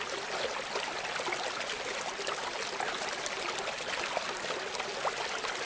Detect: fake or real real